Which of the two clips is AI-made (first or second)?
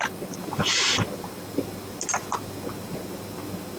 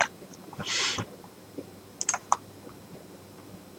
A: second